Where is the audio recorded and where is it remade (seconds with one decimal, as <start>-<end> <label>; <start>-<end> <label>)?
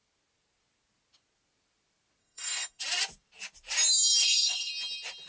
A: 0.0-2.2 recorded; 2.2-2.8 remade; 2.8-4.2 recorded; 4.2-4.7 remade; 4.7-5.3 recorded